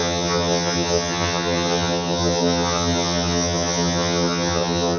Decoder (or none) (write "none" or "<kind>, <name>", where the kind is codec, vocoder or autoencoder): vocoder, HiFi-GAN